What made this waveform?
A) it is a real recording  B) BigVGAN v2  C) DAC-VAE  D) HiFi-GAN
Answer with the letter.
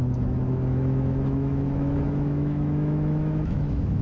C